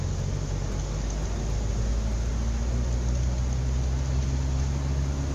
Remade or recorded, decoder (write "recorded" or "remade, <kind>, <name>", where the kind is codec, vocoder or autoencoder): recorded